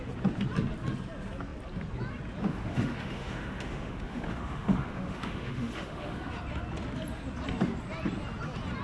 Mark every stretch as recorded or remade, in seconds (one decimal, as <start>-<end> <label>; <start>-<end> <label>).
0.0-2.4 recorded; 2.4-6.3 remade; 6.3-8.8 recorded